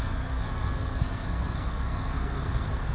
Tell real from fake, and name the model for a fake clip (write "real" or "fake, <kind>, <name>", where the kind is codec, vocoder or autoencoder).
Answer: fake, codec, SNAC